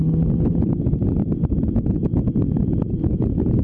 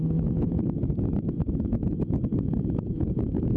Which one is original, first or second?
first